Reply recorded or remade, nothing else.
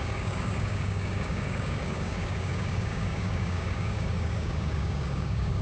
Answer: remade